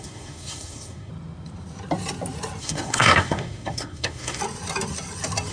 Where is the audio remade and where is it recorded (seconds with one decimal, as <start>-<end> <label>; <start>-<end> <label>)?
0.0-1.1 remade; 1.1-2.6 recorded; 2.6-4.4 remade; 4.4-5.5 recorded